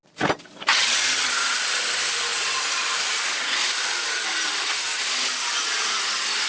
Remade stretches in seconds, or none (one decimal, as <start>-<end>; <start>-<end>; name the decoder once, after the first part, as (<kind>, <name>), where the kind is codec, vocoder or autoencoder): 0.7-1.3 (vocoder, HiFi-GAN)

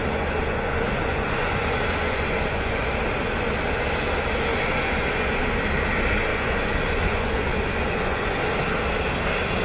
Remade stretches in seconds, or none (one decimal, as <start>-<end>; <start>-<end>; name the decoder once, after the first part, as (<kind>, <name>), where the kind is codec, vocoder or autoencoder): 0.0-2.9 (vocoder, Vocos); 4.5-5.4; 6.3-8.4

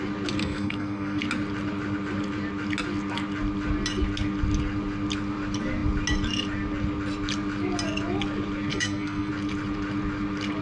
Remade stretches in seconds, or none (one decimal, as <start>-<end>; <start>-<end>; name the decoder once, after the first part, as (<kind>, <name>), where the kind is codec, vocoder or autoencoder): 0.4-1.2 (codec, SNAC); 8.7-9.3

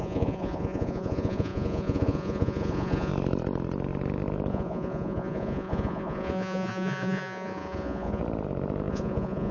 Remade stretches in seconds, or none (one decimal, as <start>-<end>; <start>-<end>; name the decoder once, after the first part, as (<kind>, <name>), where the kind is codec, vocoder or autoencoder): 0.0-3.1 (vocoder, Vocos); 4.5-8.2; 8.9-9.5